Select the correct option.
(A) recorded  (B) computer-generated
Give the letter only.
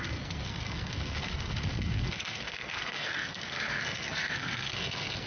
B